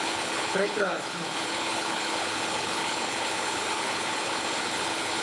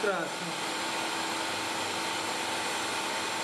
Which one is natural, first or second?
second